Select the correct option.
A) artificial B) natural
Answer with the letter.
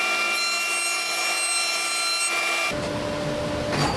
B